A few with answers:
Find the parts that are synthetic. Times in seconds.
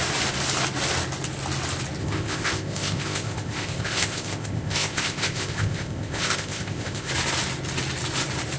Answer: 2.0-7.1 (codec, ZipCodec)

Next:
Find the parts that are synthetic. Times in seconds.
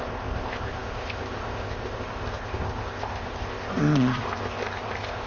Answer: 0.0-5.3 (codec, ZipCodec)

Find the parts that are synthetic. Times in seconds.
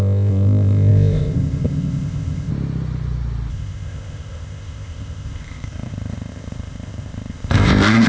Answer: 0.0-2.5 (codec, ZipCodec); 3.5-8.1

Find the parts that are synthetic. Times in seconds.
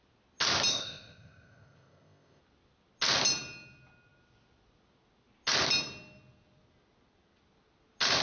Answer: 0.7-2.4 (codec, ZipCodec)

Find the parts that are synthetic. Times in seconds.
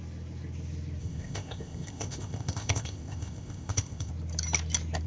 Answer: 1.0-4.1 (codec, ZipCodec)